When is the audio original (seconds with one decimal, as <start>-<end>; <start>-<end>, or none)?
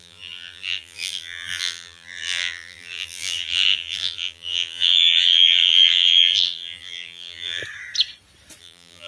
7.6-8.6